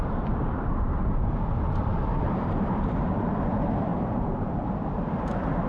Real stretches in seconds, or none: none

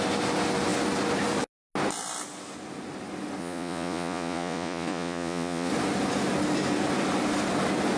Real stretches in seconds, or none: 0.0-3.4; 5.7-8.0

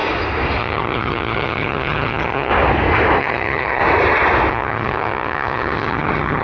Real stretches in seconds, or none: 0.0-0.6; 2.5-3.2; 3.8-4.5

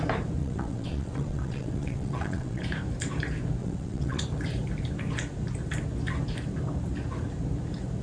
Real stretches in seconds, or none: 0.0-0.4; 2.6-3.6; 4.2-8.0